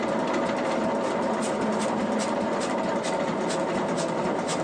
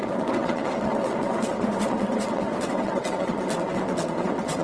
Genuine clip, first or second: first